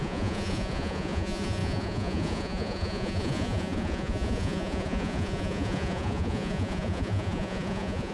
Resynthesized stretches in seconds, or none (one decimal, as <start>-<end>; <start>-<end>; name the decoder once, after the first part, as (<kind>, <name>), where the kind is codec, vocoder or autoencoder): 0.0-8.1 (vocoder, Vocos)